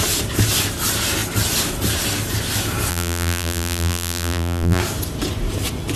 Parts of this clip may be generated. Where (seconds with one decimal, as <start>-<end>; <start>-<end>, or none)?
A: 2.9-4.8

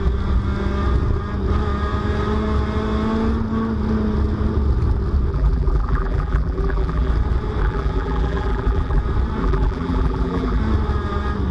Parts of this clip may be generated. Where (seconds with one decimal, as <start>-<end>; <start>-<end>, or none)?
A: 5.3-7.1; 7.6-9.0; 9.4-10.6

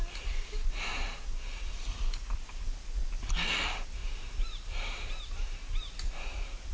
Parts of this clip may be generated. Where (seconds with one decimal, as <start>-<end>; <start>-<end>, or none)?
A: 0.9-2.5; 4.0-5.8

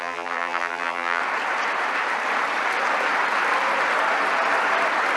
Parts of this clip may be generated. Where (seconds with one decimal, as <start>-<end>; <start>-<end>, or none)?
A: 0.0-1.2

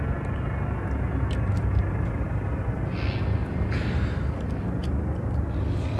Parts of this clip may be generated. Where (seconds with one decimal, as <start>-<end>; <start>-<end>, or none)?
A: 3.4-4.1